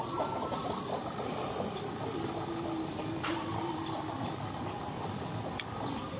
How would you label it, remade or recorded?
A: remade